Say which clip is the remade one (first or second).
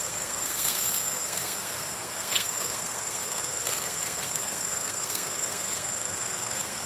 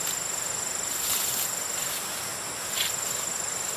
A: first